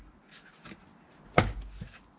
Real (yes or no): yes